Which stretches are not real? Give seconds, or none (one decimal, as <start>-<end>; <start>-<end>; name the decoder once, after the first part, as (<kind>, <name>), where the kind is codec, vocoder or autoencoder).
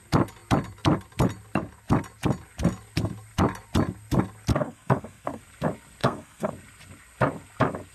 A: 4.5-5.4 (codec, SNAC); 6.0-6.5